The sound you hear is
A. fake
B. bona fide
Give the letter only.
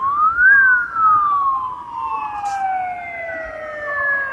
B